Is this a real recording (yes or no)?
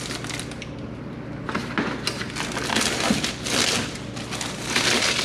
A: yes